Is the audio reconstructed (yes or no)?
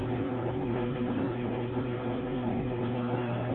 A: yes